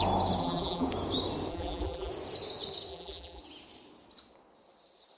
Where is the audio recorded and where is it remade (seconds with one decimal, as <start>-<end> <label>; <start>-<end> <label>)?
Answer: 0.0-0.4 recorded; 0.4-0.9 remade; 0.9-1.5 recorded; 1.5-2.1 remade; 2.1-2.9 recorded; 2.9-3.4 remade; 3.4-5.2 recorded